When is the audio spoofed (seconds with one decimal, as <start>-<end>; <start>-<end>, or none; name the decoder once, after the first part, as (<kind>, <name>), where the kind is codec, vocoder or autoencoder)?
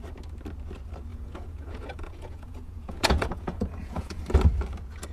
1.1-4.2 (vocoder, Vocos)